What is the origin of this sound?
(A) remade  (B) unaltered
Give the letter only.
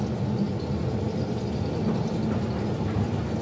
B